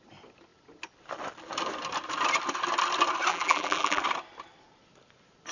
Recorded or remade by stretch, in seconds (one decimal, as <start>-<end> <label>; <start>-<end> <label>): 0.0-3.3 recorded; 3.3-4.0 remade; 4.0-5.5 recorded